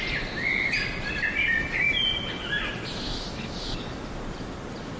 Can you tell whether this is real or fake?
real